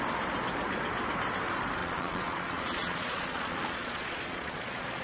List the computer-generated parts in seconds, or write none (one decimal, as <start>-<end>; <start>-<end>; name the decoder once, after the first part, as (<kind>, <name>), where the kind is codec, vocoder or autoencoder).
1.8-5.0 (vocoder, Vocos)